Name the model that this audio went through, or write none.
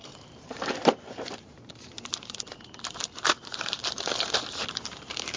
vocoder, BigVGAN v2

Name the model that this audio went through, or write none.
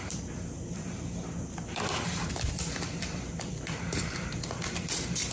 vocoder, BigVGAN v2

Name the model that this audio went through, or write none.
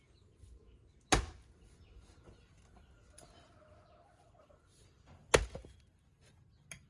none